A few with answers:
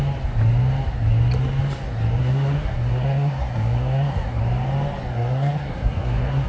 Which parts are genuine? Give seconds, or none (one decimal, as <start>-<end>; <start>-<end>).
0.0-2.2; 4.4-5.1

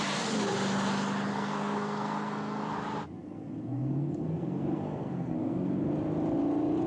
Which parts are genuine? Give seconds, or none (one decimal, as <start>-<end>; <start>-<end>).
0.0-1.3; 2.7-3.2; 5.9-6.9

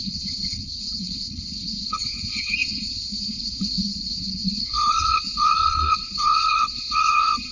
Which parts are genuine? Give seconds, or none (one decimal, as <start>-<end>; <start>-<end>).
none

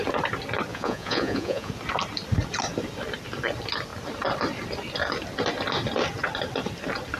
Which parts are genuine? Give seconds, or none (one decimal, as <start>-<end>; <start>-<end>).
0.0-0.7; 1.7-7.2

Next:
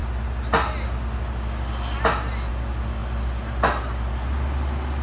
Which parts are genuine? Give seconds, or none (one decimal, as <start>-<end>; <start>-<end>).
0.0-5.0

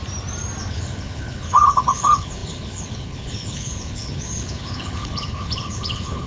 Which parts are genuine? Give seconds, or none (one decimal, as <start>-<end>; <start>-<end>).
0.0-0.7

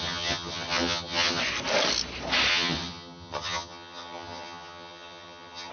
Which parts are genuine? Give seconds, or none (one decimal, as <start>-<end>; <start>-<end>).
1.4-2.5